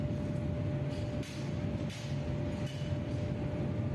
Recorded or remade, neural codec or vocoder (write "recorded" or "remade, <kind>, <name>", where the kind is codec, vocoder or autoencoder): recorded